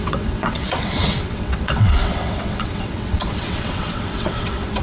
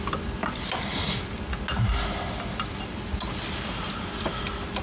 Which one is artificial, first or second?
first